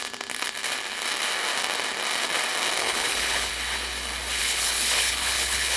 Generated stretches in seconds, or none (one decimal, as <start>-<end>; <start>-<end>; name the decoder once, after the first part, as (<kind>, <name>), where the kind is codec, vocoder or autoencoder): 2.8-3.5 (codec, HILCodec); 4.4-5.8